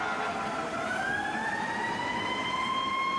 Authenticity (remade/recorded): recorded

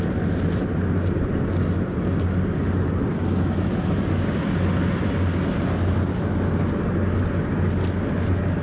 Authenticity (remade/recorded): recorded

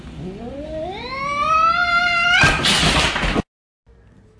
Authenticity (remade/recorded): recorded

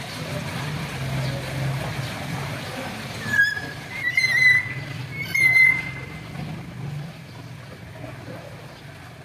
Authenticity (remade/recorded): recorded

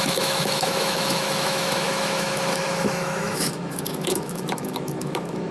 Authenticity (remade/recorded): remade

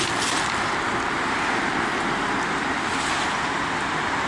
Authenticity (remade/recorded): recorded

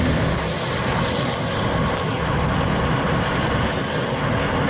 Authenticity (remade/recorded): recorded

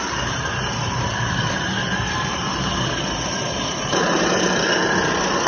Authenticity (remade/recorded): remade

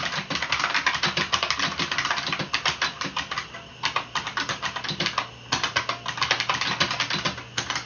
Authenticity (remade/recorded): recorded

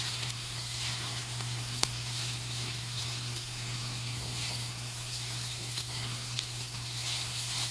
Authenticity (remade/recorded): remade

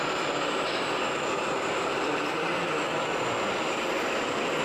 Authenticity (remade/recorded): recorded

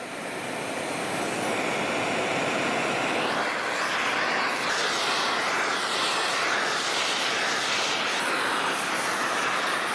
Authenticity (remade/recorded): recorded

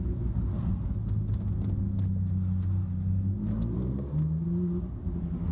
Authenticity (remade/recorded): recorded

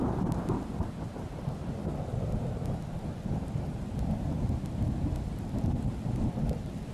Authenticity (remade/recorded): recorded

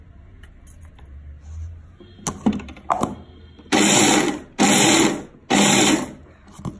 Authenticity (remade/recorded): recorded